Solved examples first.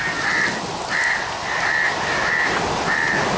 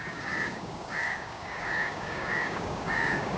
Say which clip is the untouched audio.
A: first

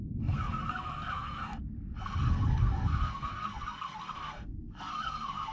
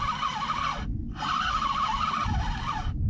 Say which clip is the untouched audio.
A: second